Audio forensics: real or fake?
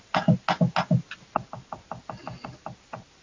real